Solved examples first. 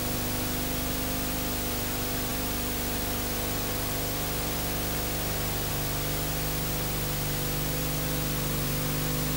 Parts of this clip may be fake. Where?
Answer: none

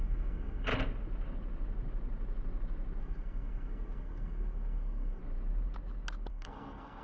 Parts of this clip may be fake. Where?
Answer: 0.0-0.7 (codec, SNAC); 3.0-5.2; 6.3-7.0

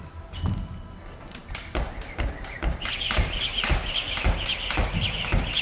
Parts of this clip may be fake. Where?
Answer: none

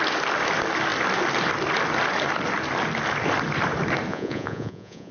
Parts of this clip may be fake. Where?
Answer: 4.1-5.1 (vocoder, Vocos)

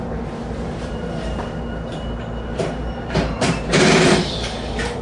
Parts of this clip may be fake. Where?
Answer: 0.0-5.0 (vocoder, BigVGAN v2)